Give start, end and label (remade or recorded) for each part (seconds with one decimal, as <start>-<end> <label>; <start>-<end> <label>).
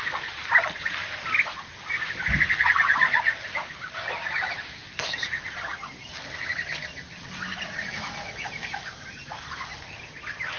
0.0-10.6 recorded